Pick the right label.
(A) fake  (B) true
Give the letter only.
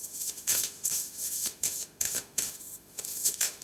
A